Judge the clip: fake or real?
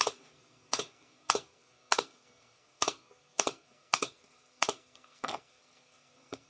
fake